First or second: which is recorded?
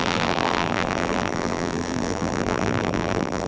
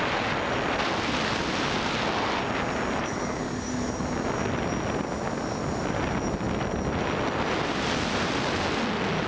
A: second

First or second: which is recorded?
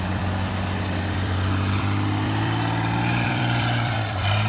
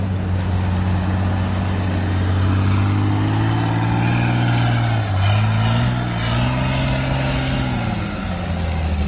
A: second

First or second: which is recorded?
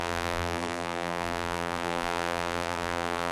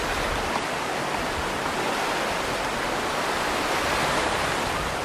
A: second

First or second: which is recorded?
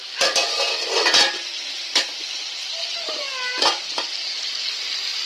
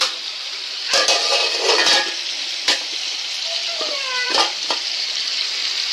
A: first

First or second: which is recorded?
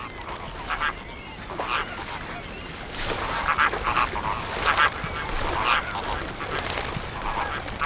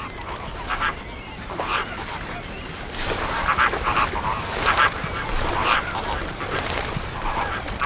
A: first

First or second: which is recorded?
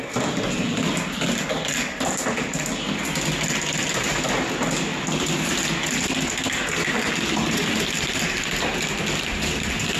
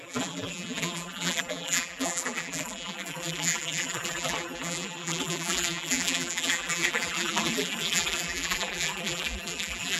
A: first